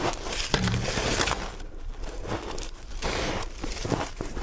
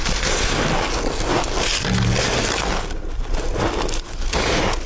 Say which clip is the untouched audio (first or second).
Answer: second